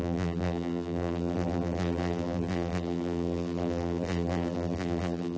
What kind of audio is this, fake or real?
fake